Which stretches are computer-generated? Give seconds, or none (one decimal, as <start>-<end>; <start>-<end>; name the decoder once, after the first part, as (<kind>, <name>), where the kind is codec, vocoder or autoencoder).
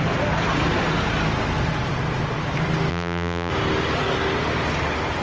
2.9-3.5 (vocoder, BigVGAN v2)